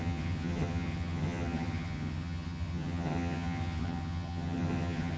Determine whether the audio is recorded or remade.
remade